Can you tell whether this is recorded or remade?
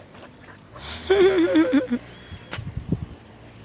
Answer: recorded